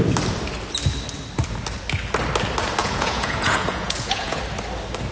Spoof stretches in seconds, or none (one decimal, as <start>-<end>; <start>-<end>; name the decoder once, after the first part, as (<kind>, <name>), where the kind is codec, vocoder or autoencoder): 2.8-4.4 (vocoder, Vocos)